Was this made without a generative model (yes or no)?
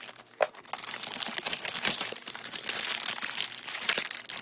no